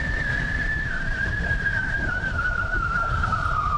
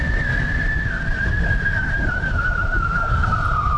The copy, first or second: first